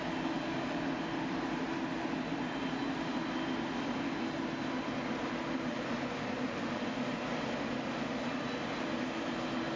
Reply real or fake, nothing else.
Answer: real